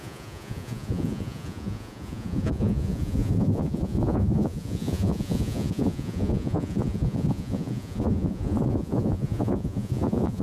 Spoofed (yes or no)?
yes